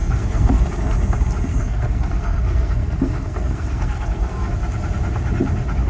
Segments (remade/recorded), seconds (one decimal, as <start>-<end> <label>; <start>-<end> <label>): 0.0-0.6 remade; 0.6-1.5 recorded; 1.5-4.5 remade; 4.5-5.9 recorded